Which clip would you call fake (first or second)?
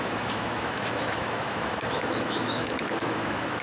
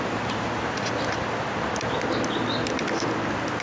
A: first